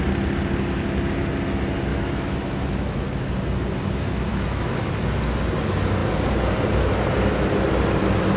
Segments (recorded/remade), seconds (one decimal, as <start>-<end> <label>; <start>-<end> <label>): 0.0-1.9 recorded; 1.9-3.3 remade; 3.3-4.3 recorded; 4.3-5.0 remade; 5.0-8.4 recorded